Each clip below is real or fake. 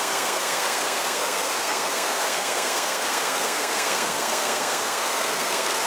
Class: fake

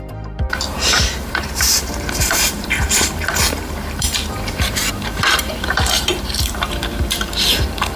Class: fake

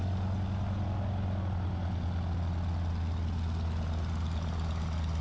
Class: real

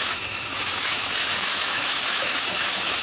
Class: fake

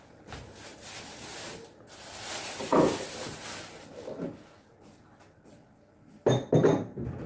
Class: real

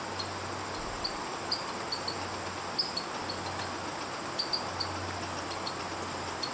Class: real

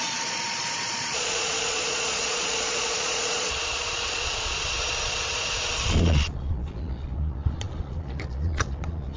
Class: fake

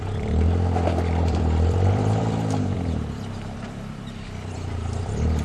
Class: fake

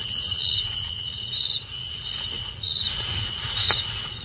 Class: fake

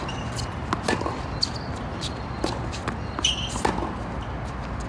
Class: real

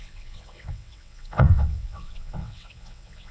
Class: fake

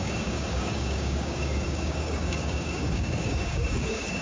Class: fake